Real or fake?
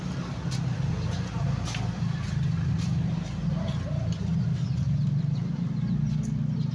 real